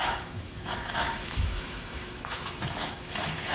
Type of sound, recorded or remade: remade